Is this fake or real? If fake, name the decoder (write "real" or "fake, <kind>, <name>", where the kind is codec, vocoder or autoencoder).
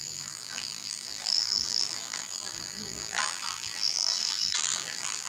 fake, vocoder, BigVGAN v2